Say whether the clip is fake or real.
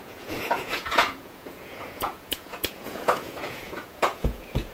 fake